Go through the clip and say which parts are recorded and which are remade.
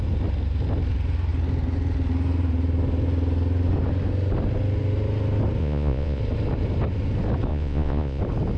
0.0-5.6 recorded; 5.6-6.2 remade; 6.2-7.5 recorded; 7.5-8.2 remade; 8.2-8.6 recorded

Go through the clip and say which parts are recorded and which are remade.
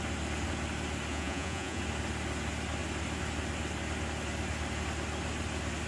0.0-1.1 recorded; 1.1-1.8 remade; 1.8-5.9 recorded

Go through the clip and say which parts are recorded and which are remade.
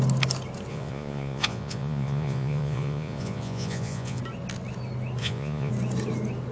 0.0-0.7 recorded; 0.7-4.2 remade; 4.2-5.2 recorded; 5.2-5.7 remade; 5.7-6.5 recorded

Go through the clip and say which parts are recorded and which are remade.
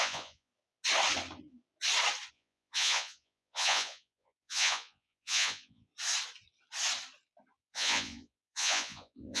0.0-0.5 remade; 0.5-2.3 recorded; 2.3-5.9 remade; 5.9-7.6 recorded; 7.6-9.4 remade